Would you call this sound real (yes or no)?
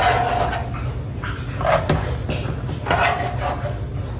yes